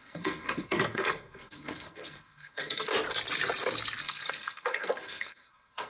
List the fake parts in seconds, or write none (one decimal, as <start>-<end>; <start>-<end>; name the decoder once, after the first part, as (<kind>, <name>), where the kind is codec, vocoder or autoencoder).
0.0-2.9 (codec, SNAC); 4.0-5.9